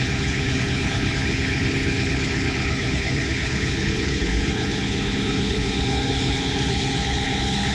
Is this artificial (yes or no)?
yes